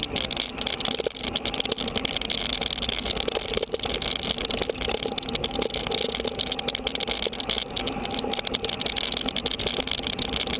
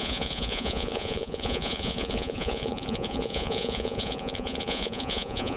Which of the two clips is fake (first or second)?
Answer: second